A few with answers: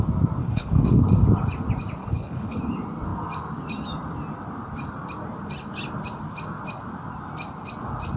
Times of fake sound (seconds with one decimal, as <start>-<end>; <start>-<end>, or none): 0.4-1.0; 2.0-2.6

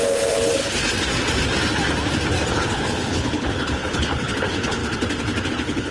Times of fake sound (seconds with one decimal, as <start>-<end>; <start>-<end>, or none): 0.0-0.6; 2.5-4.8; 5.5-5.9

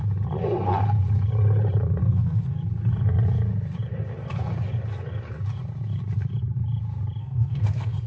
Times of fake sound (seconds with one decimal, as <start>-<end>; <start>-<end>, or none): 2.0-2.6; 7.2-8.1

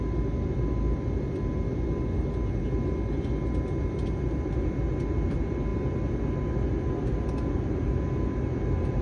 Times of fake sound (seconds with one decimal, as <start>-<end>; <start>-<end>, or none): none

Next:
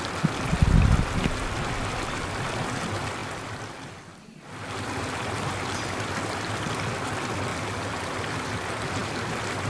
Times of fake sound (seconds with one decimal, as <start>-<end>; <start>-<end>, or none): none

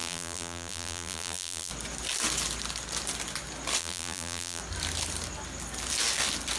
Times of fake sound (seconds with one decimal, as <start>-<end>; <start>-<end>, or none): 0.0-1.7; 3.8-4.6

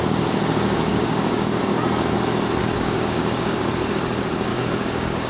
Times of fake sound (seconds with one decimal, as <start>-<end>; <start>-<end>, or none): 0.9-1.6; 2.6-3.7; 4.5-5.3